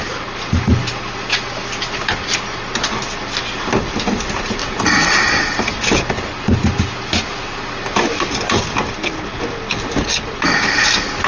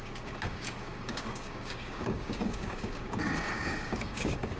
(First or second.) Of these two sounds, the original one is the first